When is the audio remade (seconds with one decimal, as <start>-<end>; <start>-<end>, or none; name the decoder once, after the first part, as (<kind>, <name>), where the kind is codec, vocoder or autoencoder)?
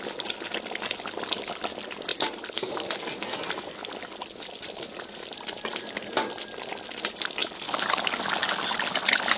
2.1-2.7 (vocoder, BigVGAN v2)